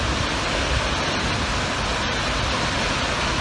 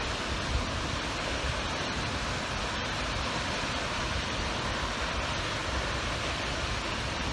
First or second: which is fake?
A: second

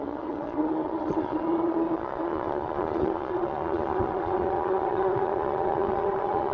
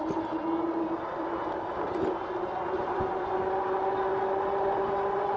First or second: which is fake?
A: first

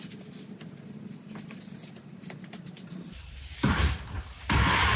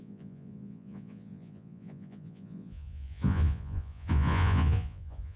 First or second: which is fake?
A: second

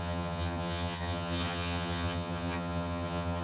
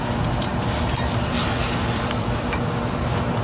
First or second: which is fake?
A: first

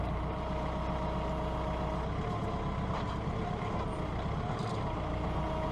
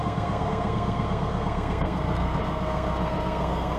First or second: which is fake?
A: second